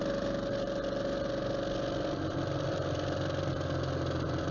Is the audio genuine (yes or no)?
yes